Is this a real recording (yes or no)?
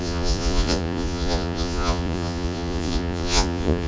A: no